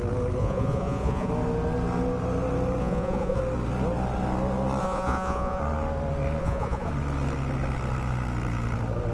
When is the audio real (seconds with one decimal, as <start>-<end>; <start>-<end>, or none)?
0.0-0.4; 1.3-2.8; 3.4-4.8; 5.6-6.4; 6.9-9.1